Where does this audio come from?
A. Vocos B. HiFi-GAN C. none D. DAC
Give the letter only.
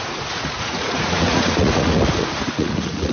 A